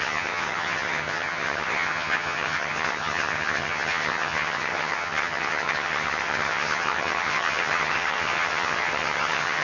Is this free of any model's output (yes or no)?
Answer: no